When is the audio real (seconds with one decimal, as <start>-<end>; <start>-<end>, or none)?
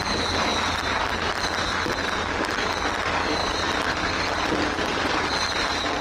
0.0-3.4